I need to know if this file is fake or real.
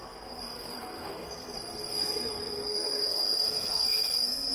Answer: fake